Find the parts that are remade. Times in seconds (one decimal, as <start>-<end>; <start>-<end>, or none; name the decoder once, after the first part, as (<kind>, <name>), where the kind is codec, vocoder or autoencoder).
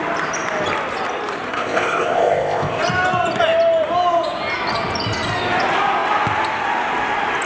1.5-2.8 (codec, ZipCodec)